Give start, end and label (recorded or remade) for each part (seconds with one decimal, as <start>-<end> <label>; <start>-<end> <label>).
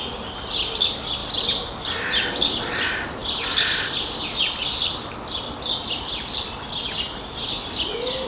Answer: 0.0-8.3 recorded